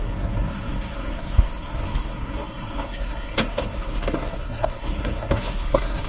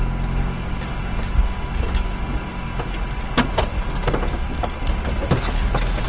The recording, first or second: second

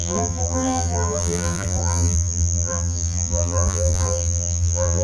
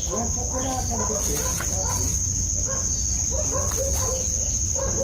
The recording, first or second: second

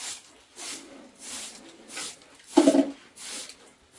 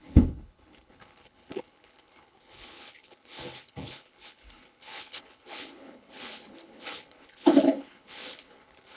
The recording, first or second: first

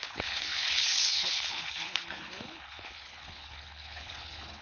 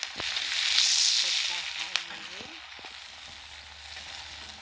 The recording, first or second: second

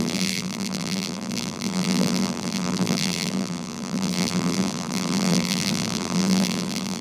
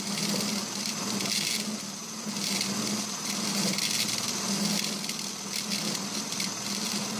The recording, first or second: second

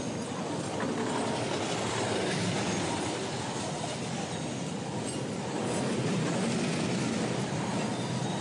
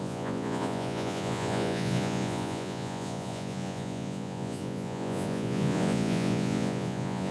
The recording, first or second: first